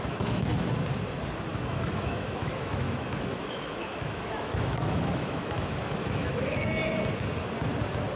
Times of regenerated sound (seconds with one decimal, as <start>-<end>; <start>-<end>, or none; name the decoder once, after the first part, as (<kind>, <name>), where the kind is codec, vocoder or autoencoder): 0.0-0.5 (autoencoder, DAC-VAE); 1.5-6.8